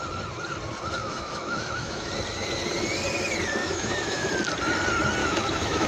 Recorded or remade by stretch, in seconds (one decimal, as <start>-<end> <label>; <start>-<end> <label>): 0.0-1.0 recorded; 1.0-2.1 remade; 2.1-3.6 recorded; 3.6-4.3 remade; 4.3-5.2 recorded; 5.2-5.9 remade